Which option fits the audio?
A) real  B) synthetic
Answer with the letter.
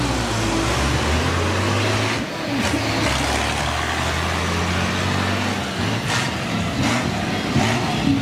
A